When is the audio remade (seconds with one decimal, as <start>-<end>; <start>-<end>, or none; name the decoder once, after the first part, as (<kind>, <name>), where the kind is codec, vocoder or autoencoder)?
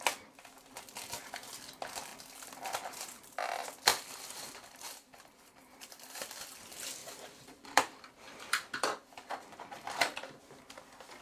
3.9-6.6 (vocoder, BigVGAN v2); 7.0-10.4